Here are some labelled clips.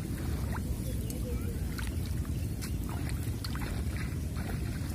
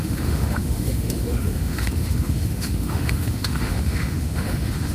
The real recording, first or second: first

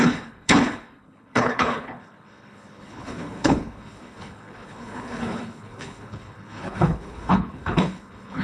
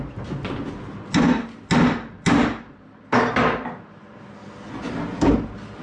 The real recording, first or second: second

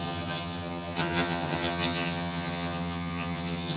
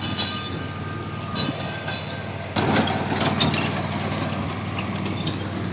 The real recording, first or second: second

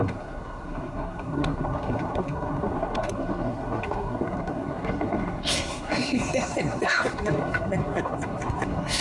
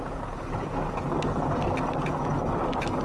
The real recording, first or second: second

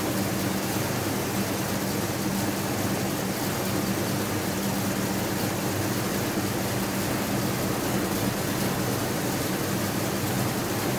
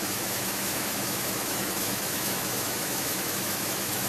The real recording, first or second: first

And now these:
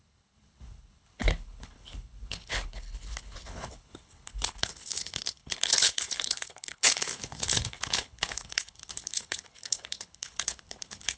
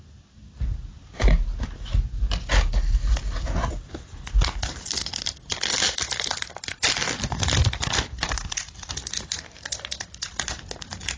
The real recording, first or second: second